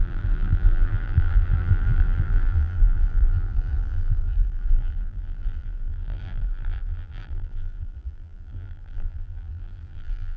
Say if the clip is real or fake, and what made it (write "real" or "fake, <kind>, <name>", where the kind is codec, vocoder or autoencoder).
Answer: fake, vocoder, BigVGAN v2